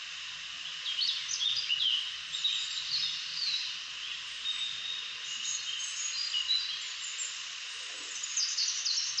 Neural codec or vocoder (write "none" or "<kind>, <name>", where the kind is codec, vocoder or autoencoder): none